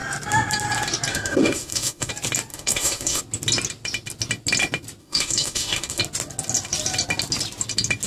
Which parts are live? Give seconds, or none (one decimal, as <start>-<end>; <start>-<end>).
0.0-1.1; 2.1-2.5; 3.2-5.0; 6.0-8.1